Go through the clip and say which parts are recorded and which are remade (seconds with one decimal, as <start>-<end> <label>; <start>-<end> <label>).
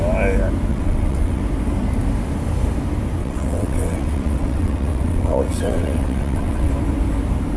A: 0.0-0.7 recorded; 0.7-1.4 remade; 1.4-3.2 recorded; 3.2-6.7 remade; 6.7-7.6 recorded